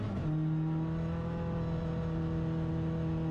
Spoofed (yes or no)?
no